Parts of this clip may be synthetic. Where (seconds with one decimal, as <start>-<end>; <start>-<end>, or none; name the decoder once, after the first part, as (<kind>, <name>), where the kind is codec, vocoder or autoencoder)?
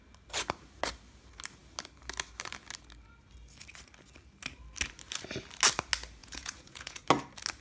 6.2-7.0 (vocoder, Vocos)